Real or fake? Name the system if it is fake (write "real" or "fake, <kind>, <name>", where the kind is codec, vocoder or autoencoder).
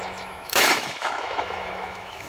fake, autoencoder, DAC-VAE